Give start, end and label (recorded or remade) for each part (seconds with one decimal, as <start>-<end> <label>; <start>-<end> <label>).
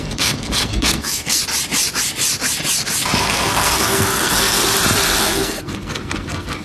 0.0-1.4 remade; 1.4-3.2 recorded; 3.2-4.6 remade; 4.6-5.2 recorded; 5.2-6.6 remade